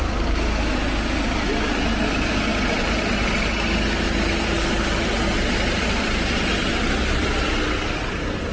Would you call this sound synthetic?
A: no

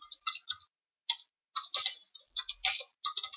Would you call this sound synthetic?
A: no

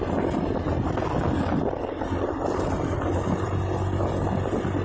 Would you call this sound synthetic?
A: no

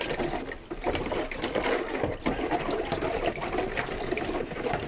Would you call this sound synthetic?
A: no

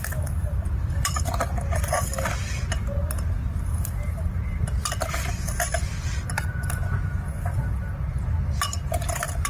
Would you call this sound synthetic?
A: no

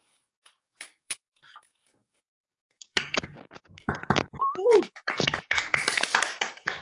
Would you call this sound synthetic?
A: yes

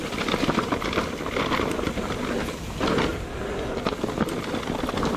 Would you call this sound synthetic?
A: no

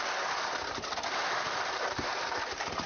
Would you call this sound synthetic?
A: no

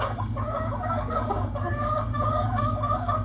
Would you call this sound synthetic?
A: yes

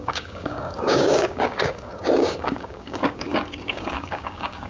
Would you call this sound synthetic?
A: yes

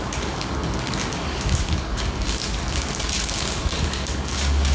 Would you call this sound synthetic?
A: yes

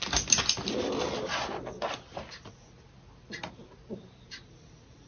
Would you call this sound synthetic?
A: no